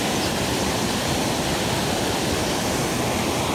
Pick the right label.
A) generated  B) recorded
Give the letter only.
B